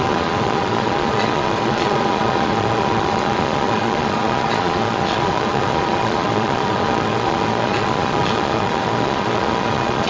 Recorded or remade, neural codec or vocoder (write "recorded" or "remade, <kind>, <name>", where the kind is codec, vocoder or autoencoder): remade, vocoder, Vocos